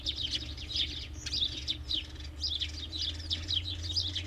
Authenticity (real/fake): real